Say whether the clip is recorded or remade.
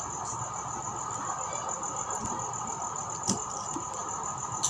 recorded